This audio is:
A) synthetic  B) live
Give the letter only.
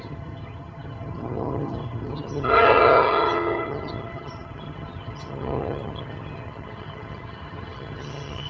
A